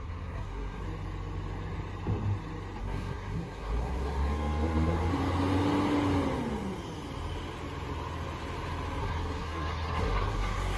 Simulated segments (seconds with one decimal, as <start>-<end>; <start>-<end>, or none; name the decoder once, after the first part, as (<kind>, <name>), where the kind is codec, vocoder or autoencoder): 0.0-0.8 (codec, SNAC); 2.8-5.1; 9.0-10.8